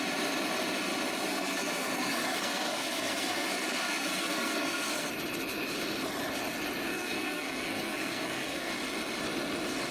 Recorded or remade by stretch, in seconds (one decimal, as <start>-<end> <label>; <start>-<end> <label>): 0.0-1.3 recorded; 1.3-5.1 remade; 5.1-6.9 recorded; 6.9-8.7 remade; 8.7-9.9 recorded